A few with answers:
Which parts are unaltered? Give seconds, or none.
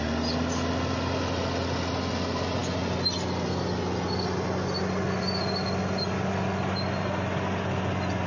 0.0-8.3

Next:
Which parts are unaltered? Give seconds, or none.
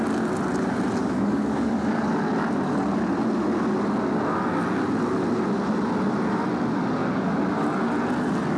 0.0-1.0; 2.1-8.6